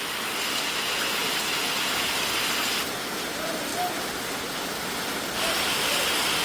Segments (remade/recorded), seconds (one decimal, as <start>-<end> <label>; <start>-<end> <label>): 0.0-6.4 recorded